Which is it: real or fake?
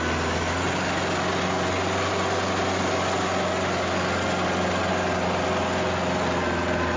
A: real